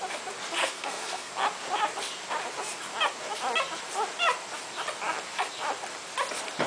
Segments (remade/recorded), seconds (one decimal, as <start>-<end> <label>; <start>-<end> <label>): 0.0-0.6 recorded; 0.6-1.3 remade; 1.3-6.7 recorded